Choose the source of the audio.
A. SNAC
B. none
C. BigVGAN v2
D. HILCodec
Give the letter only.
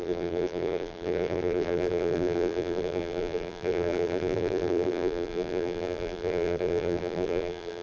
C